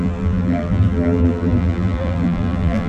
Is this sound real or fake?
fake